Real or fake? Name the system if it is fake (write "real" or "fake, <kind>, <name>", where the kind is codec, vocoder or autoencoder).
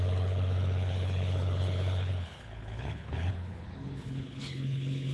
fake, codec, HILCodec